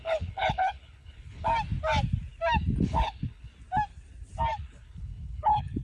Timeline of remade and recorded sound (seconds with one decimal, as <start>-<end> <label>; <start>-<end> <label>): 0.0-1.5 remade; 1.5-2.8 recorded; 2.8-3.5 remade; 3.5-4.6 recorded; 4.6-5.8 remade